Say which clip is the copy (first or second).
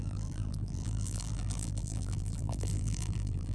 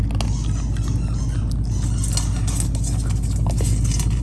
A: first